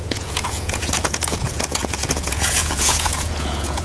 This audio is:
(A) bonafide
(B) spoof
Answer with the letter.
B